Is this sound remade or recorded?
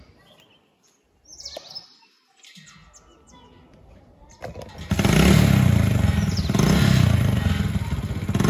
recorded